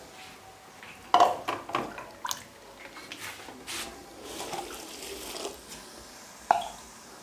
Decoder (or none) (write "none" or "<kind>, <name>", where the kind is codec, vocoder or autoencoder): none